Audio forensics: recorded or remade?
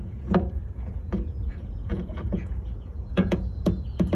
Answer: remade